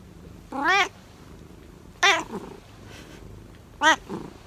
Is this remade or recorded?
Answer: recorded